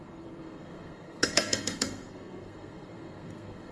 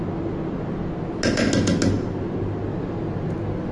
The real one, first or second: second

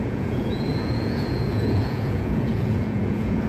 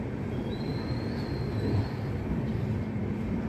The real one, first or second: second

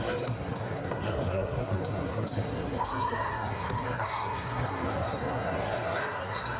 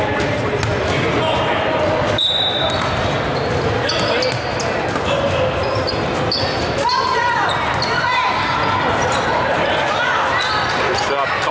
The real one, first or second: second